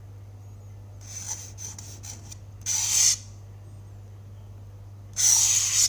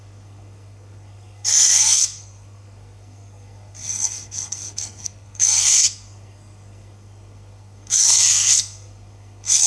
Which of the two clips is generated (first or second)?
second